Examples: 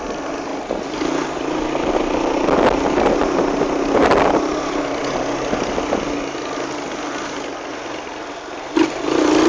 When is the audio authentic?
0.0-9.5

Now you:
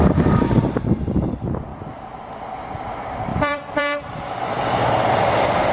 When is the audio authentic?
0.0-3.3; 4.9-5.7